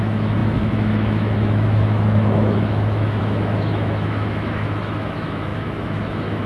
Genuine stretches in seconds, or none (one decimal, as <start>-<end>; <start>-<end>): none